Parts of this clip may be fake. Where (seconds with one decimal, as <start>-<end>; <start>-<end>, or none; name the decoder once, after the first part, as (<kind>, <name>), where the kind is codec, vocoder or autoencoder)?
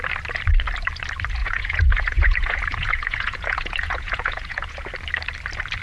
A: 1.4-4.9 (vocoder, Vocos)